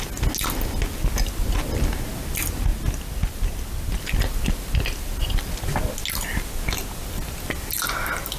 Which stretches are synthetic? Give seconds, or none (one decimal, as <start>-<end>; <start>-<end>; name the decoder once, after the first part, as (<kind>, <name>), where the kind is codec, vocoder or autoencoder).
none